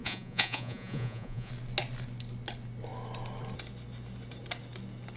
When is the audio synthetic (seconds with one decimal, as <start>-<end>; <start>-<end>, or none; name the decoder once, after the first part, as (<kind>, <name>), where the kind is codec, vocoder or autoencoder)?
0.0-1.5 (vocoder, Vocos)